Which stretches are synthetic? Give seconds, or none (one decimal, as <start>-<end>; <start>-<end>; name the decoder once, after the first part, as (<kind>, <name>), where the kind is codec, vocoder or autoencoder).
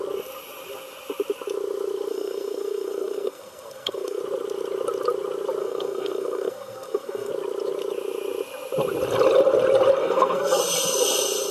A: 2.1-4.2 (codec, SNAC); 5.6-7.3; 10.0-10.6